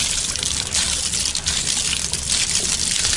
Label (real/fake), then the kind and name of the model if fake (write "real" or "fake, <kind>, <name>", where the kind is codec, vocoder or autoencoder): real